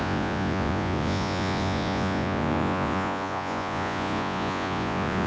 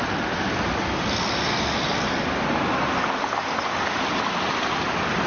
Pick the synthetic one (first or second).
first